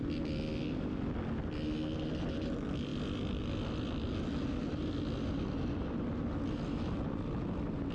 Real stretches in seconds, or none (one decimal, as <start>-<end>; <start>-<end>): 0.0-7.9